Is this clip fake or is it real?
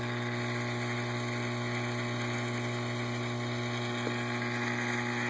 real